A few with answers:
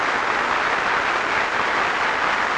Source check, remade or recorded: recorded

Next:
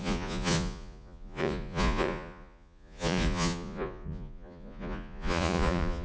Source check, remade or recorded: remade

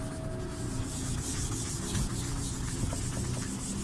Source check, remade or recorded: recorded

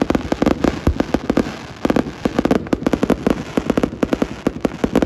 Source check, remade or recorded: recorded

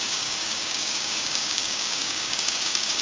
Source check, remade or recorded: remade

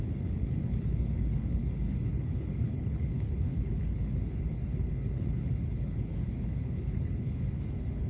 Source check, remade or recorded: remade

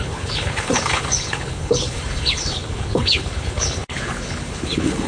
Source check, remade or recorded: remade